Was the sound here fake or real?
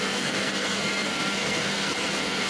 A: fake